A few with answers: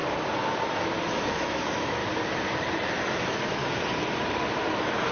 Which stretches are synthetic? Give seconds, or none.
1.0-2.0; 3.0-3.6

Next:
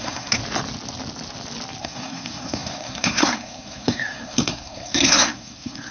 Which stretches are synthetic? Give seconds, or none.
0.0-0.4; 1.8-5.9

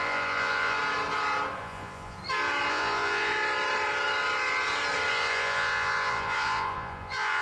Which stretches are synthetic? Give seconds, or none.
0.0-0.8; 1.6-2.2; 2.7-3.3; 5.1-7.4

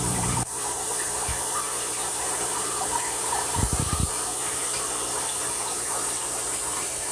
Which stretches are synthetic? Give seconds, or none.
0.0-0.9; 2.1-4.6; 6.0-7.1

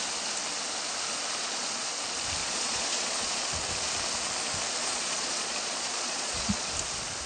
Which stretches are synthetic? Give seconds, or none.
1.4-1.9; 2.4-3.4; 4.8-6.7